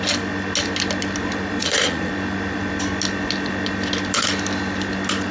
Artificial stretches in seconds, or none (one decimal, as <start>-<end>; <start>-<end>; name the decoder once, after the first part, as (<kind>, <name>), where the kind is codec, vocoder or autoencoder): 1.6-2.1 (vocoder, Vocos)